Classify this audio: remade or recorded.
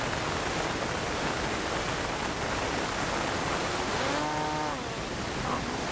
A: recorded